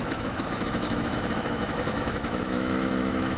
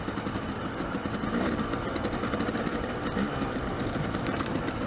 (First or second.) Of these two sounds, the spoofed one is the first